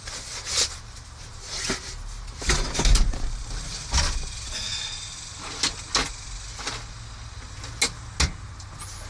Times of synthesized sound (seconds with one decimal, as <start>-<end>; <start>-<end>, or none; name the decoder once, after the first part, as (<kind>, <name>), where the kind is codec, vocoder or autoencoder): none